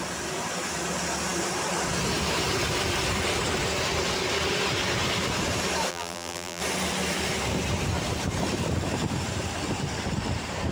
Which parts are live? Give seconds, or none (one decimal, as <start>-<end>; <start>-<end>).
0.0-5.9; 6.6-10.7

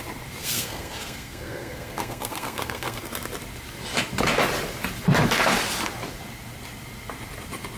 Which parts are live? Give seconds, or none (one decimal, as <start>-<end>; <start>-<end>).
0.0-0.4; 3.0-7.8

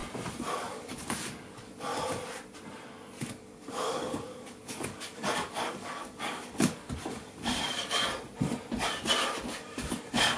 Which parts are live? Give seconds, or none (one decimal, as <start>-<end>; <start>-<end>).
0.0-0.5; 1.9-3.2; 8.1-9.5

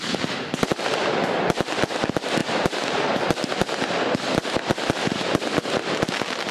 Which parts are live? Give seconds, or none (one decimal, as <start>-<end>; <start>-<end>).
0.0-6.5

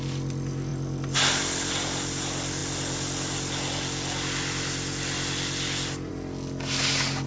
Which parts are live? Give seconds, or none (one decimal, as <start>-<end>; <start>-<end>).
0.0-7.3